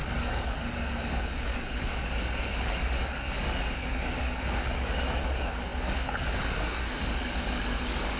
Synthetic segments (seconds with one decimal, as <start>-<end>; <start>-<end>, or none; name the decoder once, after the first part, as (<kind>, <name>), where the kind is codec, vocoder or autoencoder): 0.0-8.2 (codec, DAC)